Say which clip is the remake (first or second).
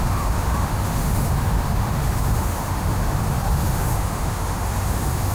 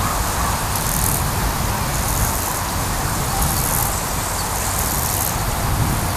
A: first